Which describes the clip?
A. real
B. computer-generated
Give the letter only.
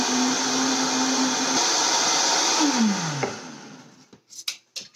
A